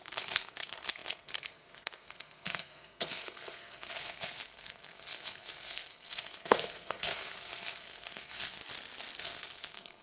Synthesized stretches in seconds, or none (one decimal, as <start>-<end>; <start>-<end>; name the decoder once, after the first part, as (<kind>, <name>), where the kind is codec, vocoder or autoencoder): 0.0-8.6 (codec, SNAC); 9.2-10.0